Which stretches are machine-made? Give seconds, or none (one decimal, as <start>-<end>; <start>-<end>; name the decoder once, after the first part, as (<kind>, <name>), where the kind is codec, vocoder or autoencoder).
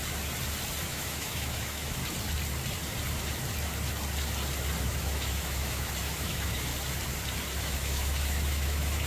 0.8-2.0 (autoencoder, DAC-VAE); 4.8-6.7; 7.6-9.1